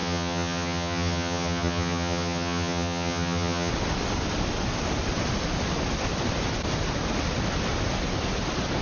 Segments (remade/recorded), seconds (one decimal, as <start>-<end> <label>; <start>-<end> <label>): 0.0-3.7 remade; 3.7-8.8 recorded